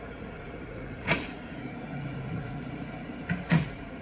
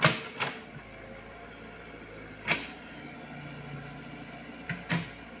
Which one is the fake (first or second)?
first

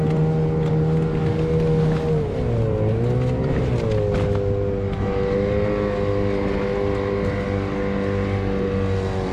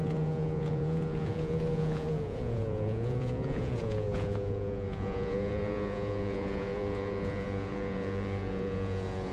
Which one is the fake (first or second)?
second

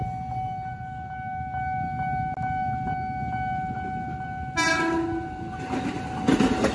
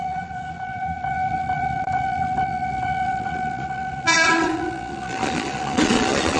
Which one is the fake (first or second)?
second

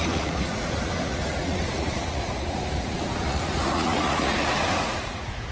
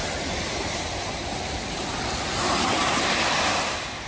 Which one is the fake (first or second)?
first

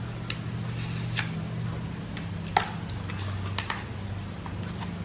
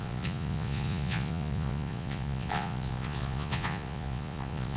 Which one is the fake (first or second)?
second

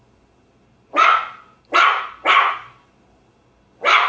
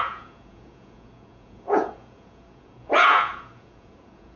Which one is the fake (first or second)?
second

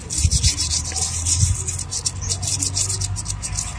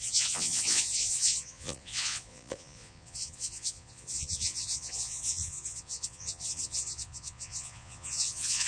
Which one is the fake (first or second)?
second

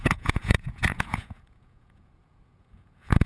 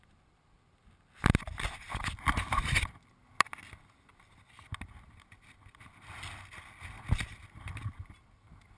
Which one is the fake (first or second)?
first